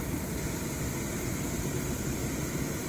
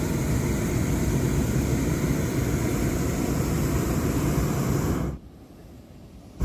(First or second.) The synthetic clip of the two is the first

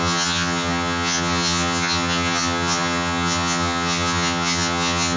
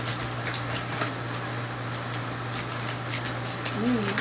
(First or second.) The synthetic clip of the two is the first